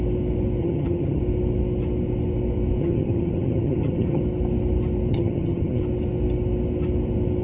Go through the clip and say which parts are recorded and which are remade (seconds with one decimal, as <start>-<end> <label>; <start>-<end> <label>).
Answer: 0.0-0.6 recorded; 0.6-1.2 remade; 1.2-2.8 recorded; 2.8-4.2 remade; 4.2-5.1 recorded; 5.1-5.8 remade; 5.8-7.4 recorded